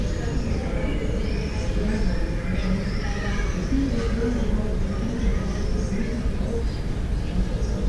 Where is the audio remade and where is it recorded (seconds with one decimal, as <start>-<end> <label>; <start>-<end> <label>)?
0.0-0.6 recorded; 0.6-1.7 remade; 1.7-4.7 recorded; 4.7-6.4 remade; 6.4-7.9 recorded